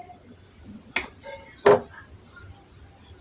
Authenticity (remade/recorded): recorded